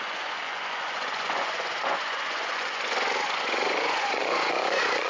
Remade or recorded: remade